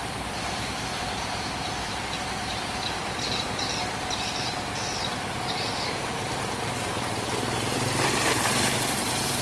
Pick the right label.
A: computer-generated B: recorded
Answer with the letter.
A